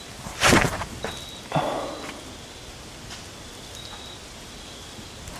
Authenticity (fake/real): real